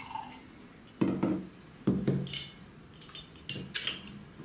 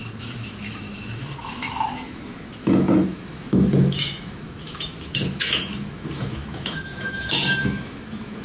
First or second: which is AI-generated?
second